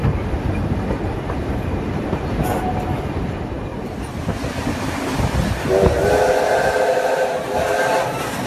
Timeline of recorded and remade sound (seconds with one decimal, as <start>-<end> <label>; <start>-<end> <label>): 0.0-8.5 recorded